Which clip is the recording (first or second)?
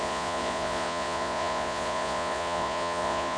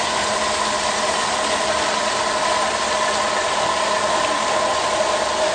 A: second